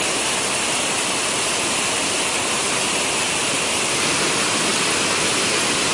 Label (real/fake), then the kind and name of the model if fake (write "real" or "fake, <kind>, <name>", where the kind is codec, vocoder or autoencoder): real